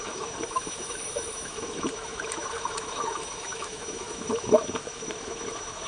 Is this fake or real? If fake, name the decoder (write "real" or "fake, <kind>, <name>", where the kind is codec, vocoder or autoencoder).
fake, autoencoder, DAC-VAE